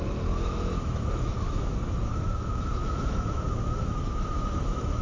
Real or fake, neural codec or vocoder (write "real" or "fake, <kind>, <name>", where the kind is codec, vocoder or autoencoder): fake, autoencoder, DAC-VAE